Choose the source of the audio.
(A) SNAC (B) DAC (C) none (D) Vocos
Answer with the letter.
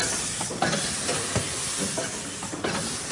C